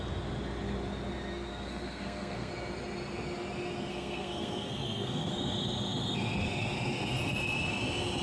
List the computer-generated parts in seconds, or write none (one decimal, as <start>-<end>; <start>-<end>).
1.5-2.5; 3.9-5.3